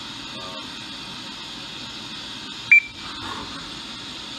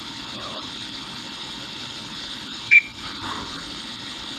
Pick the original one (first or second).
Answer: first